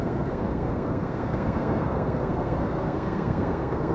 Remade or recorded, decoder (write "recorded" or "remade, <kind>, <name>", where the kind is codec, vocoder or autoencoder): remade, codec, SNAC